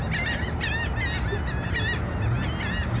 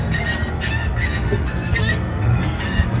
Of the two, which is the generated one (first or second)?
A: second